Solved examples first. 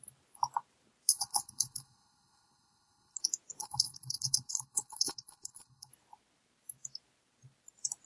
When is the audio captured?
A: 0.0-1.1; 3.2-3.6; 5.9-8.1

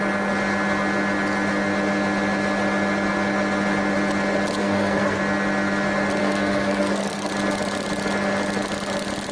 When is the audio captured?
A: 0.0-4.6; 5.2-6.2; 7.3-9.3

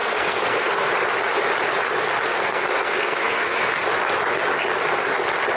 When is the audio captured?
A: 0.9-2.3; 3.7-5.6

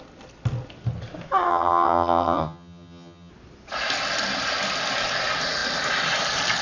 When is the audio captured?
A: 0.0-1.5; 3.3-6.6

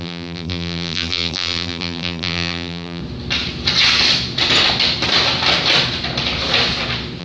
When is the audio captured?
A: 3.0-7.2